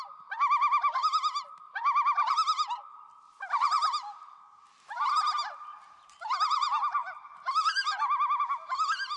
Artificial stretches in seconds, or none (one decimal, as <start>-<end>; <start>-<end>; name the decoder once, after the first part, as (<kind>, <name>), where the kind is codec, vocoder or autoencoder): 7.0-8.4 (vocoder, BigVGAN v2)